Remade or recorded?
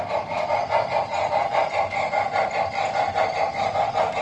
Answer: recorded